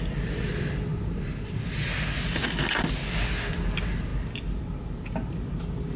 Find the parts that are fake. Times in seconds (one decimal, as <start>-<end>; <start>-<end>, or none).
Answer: none